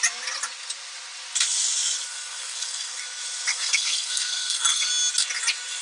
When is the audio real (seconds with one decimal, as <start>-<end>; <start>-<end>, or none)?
0.0-2.1; 3.0-3.5; 4.9-5.8